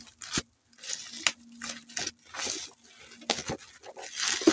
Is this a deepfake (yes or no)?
no